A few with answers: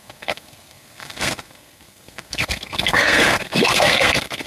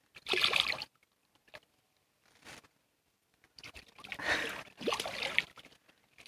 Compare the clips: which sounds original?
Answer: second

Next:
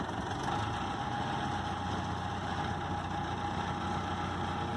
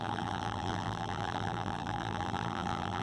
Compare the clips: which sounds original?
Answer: first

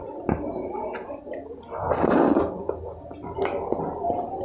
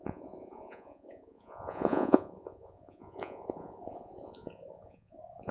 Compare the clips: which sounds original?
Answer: first